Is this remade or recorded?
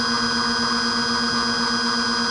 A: recorded